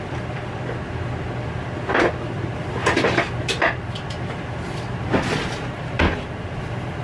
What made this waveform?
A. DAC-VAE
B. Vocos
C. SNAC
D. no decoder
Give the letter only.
D